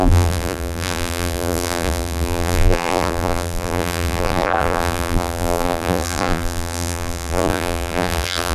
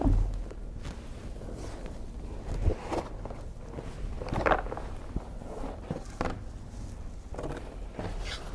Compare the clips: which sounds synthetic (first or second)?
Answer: first